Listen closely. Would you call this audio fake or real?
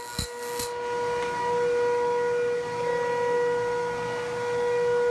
real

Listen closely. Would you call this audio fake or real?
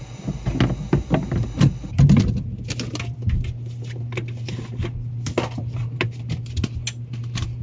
real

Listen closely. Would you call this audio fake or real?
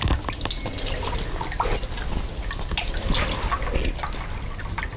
real